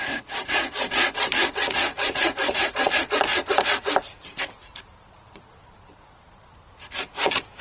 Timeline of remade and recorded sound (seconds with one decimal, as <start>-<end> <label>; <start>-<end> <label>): 0.0-3.3 remade; 3.3-5.0 recorded; 5.0-6.5 remade; 6.5-7.1 recorded; 7.1-7.6 remade

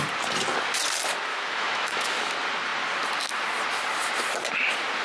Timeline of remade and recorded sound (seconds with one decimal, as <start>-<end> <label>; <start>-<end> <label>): 0.0-1.3 recorded; 1.3-2.3 remade; 2.3-5.0 recorded

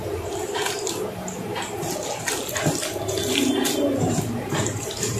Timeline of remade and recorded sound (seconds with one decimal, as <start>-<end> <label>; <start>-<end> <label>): 0.0-1.4 remade; 1.4-3.8 recorded; 3.8-5.2 remade

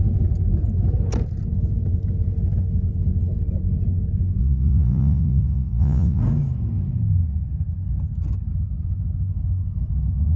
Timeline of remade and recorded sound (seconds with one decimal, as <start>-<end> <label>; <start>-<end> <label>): 0.0-4.4 recorded; 4.4-6.2 remade; 6.2-10.4 recorded

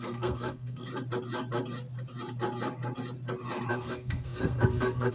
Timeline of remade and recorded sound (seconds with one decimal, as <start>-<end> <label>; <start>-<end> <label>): 0.0-0.9 remade; 0.9-3.7 recorded; 3.7-5.1 remade

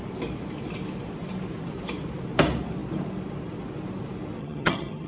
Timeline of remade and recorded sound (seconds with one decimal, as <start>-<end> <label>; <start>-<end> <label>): 0.0-4.4 recorded; 4.4-5.1 remade

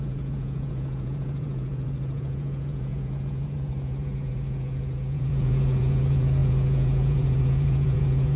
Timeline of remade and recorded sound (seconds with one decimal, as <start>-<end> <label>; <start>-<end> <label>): 0.0-8.4 remade

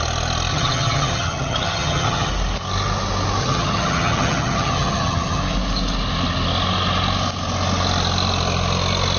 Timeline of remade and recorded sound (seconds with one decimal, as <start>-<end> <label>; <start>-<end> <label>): 0.0-0.5 recorded; 0.5-2.3 remade; 2.3-3.4 recorded; 3.4-5.4 remade; 5.4-9.2 recorded